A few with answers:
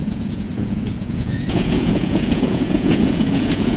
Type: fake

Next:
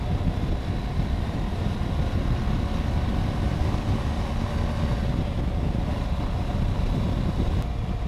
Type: real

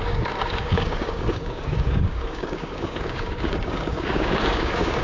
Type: fake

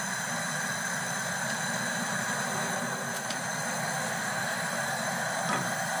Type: fake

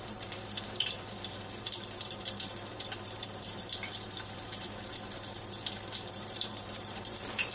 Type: fake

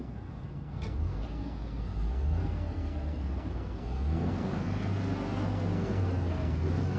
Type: fake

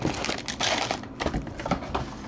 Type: real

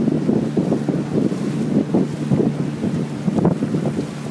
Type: real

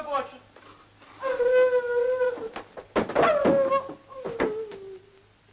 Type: real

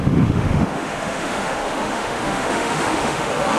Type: fake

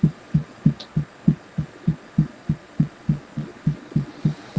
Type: fake